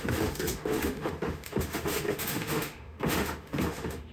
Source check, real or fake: fake